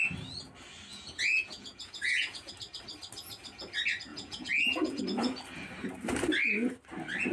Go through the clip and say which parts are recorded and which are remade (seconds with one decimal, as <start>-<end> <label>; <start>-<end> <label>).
0.0-0.9 recorded; 0.9-2.5 remade; 2.5-4.1 recorded; 4.1-5.0 remade; 5.0-7.3 recorded

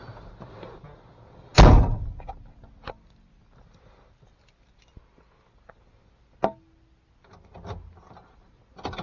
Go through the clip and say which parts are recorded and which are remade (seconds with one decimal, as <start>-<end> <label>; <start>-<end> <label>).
0.0-9.0 recorded

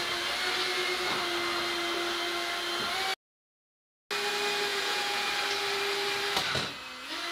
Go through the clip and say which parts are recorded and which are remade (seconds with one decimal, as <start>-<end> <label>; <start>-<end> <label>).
0.0-4.7 recorded; 4.7-5.3 remade; 5.3-7.3 recorded

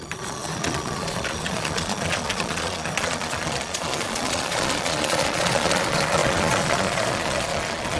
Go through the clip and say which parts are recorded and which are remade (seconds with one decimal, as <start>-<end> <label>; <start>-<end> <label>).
0.0-8.0 remade